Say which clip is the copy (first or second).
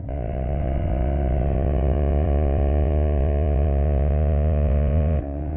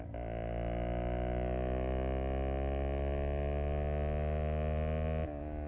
first